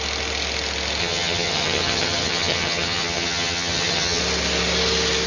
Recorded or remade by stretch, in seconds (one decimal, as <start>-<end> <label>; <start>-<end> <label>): 0.0-1.0 recorded; 1.0-4.2 remade; 4.2-5.3 recorded